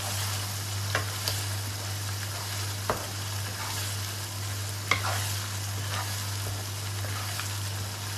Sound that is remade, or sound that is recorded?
recorded